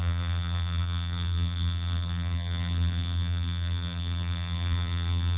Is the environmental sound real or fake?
fake